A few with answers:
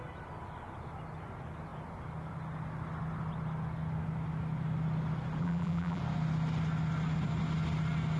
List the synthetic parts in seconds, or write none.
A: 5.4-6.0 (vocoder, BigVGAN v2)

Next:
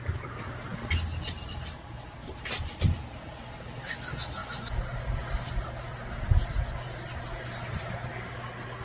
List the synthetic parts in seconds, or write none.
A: none

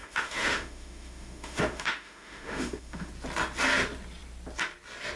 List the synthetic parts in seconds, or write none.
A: 0.0-3.1 (autoencoder, DAC-VAE)

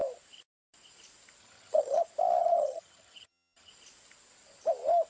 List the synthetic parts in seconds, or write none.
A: 1.4-2.0 (vocoder, HiFi-GAN); 2.4-3.7

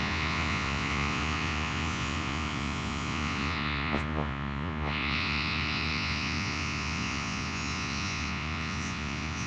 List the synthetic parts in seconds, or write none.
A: 0.0-9.5 (vocoder, Vocos)

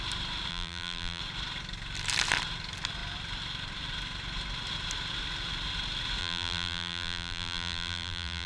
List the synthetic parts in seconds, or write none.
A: 0.5-1.2 (vocoder, BigVGAN v2); 6.2-8.5